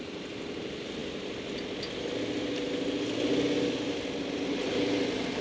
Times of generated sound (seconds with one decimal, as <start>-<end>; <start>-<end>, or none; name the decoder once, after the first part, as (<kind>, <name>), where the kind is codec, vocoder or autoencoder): none